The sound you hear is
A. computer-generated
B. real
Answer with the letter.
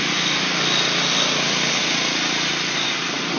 B